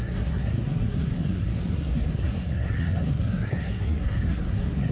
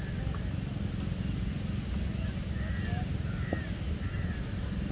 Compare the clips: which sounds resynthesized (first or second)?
first